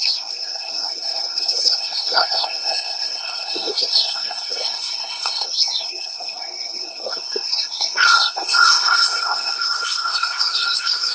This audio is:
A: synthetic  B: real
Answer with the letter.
A